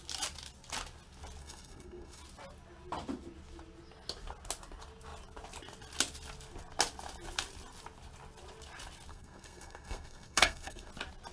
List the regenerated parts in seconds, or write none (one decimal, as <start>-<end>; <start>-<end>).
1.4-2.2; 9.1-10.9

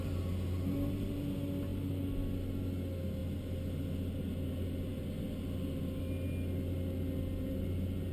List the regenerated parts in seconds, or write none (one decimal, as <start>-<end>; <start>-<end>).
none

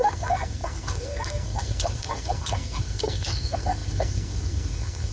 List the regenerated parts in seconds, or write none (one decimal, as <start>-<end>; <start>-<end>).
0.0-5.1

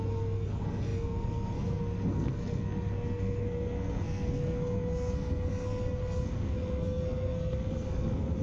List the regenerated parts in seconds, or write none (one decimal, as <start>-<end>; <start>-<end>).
0.0-8.4